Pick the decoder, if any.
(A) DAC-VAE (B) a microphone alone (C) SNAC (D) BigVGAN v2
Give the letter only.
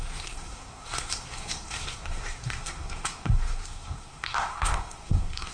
C